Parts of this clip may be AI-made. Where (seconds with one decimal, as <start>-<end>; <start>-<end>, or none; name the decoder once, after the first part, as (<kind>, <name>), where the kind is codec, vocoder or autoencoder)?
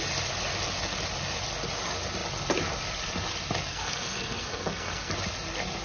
3.7-5.1 (codec, SNAC)